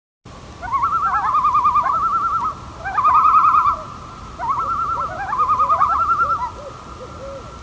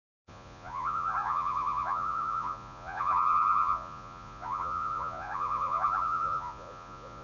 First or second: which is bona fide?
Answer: first